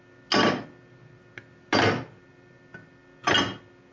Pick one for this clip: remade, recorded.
recorded